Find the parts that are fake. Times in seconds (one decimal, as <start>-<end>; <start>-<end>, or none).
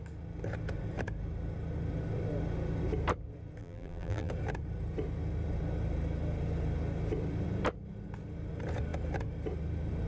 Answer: 3.6-4.3